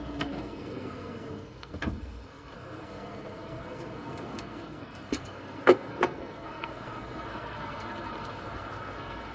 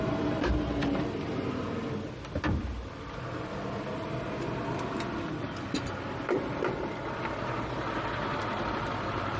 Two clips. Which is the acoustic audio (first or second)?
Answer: second